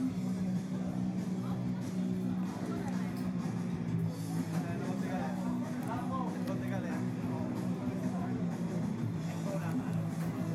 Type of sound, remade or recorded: recorded